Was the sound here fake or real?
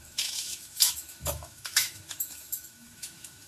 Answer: fake